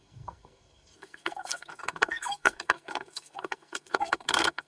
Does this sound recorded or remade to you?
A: remade